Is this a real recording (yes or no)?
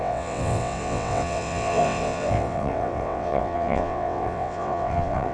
no